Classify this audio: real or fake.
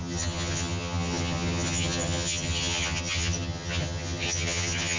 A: fake